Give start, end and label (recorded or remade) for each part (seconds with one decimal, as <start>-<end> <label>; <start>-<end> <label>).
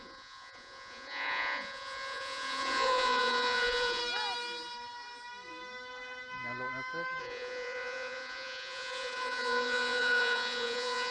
0.0-4.0 remade; 4.0-7.2 recorded; 7.2-11.1 remade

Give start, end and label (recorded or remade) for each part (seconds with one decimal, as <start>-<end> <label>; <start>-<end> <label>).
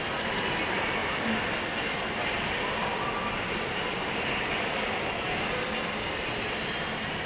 0.0-7.3 recorded